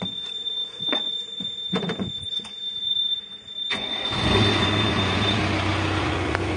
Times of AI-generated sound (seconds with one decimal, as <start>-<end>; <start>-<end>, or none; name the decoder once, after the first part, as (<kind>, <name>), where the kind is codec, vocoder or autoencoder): 0.0-5.4 (vocoder, Vocos); 6.0-6.6